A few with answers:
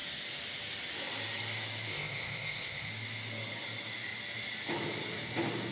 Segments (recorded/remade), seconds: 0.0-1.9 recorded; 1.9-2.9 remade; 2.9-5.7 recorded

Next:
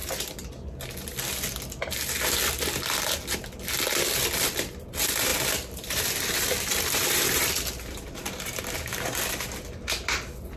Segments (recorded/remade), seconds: 0.0-0.5 remade; 0.5-5.3 recorded; 5.3-7.5 remade; 7.5-10.6 recorded

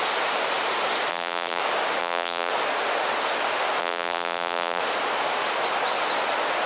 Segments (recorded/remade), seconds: 0.0-1.1 recorded; 1.1-1.6 remade; 1.6-2.0 recorded; 2.0-2.5 remade; 2.5-3.8 recorded; 3.8-4.8 remade; 4.8-6.7 recorded

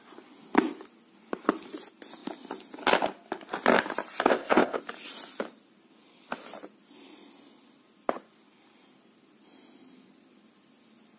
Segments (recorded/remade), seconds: 0.0-4.3 recorded; 4.3-4.8 remade; 4.8-11.2 recorded

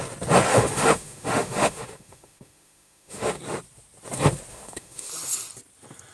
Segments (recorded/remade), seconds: 0.0-0.5 recorded; 0.5-3.4 remade; 3.4-4.5 recorded; 4.5-5.1 remade; 5.1-6.1 recorded

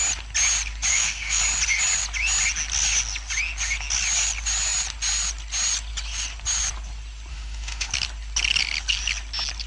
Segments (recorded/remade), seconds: 0.0-0.9 recorded; 0.9-1.4 remade; 1.4-7.3 recorded; 7.3-7.9 remade; 7.9-9.7 recorded

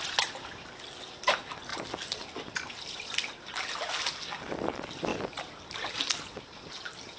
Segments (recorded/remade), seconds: 0.0-5.1 recorded; 5.1-6.0 remade; 6.0-7.2 recorded